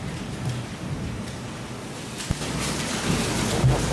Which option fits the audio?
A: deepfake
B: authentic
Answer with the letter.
B